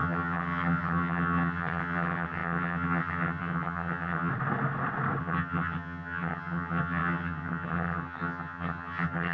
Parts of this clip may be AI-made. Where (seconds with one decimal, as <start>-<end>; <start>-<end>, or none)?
0.0-4.3; 5.2-9.3

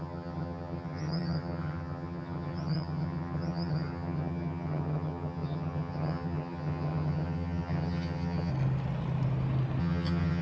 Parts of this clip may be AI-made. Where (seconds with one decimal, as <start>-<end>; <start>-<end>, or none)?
0.0-8.5; 9.8-10.4

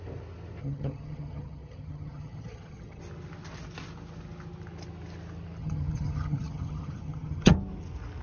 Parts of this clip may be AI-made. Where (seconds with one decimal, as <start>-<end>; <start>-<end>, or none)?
0.6-3.0; 5.6-7.5

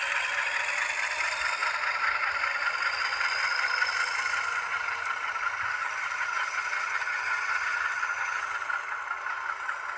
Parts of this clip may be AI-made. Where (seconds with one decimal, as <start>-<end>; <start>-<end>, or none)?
5.7-8.4